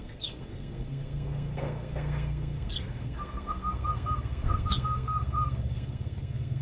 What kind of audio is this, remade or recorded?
remade